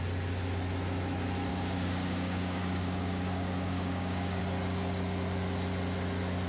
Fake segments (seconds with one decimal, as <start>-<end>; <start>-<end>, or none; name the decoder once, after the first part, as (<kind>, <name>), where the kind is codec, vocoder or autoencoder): 1.5-4.4 (codec, DAC)